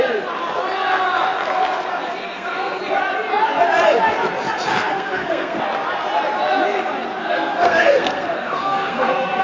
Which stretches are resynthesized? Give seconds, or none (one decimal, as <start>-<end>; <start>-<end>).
2.2-2.8; 4.7-5.6; 7.2-9.4